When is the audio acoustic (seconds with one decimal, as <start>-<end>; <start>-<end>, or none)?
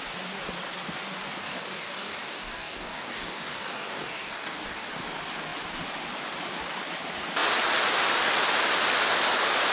0.0-1.4; 4.9-9.7